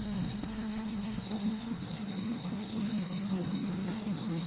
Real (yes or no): no